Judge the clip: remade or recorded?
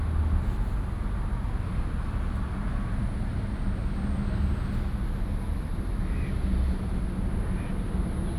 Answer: recorded